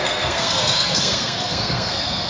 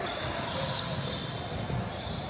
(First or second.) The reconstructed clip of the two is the first